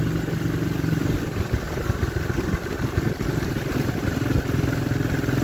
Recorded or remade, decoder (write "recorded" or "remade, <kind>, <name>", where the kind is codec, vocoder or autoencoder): recorded